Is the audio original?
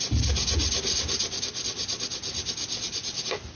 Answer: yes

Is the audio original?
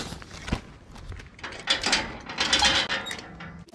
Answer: yes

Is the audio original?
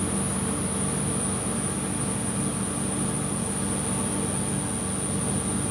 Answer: yes